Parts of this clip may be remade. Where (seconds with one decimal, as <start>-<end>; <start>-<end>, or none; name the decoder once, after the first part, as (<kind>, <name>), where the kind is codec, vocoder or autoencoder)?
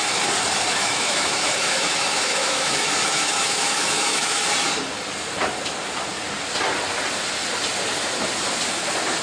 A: 0.7-4.4 (autoencoder, DAC-VAE)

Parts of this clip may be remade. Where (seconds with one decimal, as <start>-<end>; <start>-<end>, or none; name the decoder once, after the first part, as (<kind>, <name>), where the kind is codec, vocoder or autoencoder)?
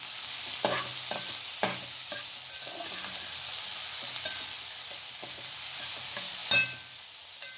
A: none